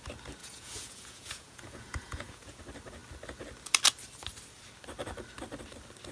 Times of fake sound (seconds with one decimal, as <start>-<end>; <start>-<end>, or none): 0.4-2.6